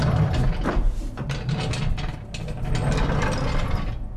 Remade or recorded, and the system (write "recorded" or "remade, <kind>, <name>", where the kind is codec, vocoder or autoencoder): recorded